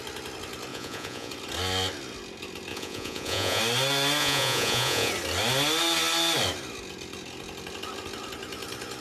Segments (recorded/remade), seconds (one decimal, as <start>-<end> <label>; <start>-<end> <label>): 0.0-0.7 recorded; 0.7-1.3 remade; 1.3-2.7 recorded; 2.7-3.6 remade; 3.6-4.2 recorded; 4.2-5.1 remade; 5.1-9.0 recorded